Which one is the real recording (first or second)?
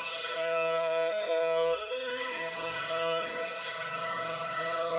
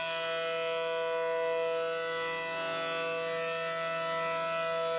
second